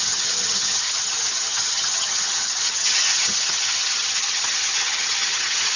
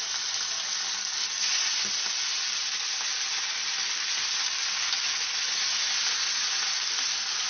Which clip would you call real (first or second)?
second